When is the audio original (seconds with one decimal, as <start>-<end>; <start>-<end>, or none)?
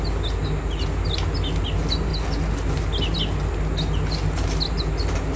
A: 0.0-5.4